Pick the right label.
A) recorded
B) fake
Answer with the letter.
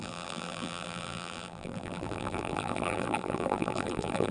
B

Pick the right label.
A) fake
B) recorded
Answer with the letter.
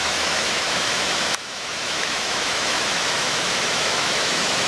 A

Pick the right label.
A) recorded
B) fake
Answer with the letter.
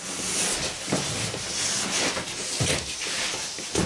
A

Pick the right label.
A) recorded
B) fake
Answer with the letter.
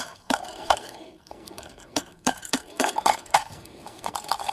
B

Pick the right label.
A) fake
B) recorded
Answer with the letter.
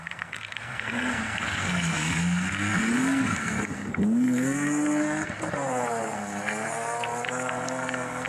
A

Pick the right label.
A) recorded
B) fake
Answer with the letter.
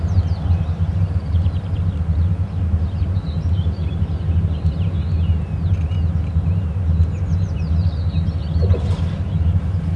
A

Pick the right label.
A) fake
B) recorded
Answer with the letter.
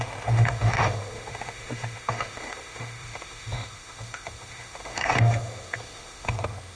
A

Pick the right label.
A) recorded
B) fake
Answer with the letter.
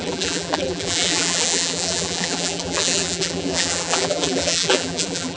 B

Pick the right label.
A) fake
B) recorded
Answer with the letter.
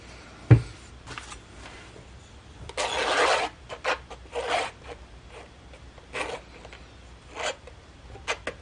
B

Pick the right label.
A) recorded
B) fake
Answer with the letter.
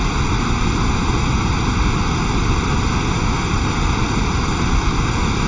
A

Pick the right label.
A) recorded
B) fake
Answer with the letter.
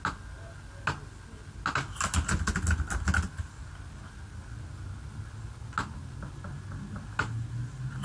A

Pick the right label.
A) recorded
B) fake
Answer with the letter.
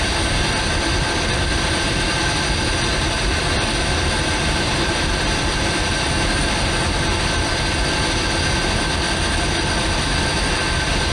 A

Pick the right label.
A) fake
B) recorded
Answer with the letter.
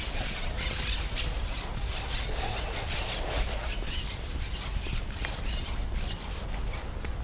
B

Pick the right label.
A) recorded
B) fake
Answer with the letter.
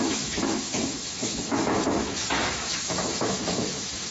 B